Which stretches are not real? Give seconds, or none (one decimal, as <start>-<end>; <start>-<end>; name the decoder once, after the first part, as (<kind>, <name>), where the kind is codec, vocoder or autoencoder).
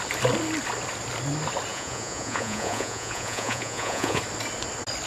1.7-4.2 (vocoder, Vocos)